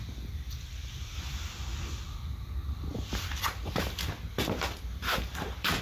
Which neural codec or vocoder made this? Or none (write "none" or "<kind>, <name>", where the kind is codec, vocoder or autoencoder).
vocoder, BigVGAN v2